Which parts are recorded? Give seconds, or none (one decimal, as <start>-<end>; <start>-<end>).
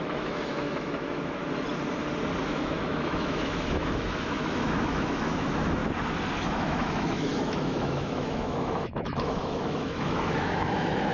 1.4-2.4; 5.8-6.4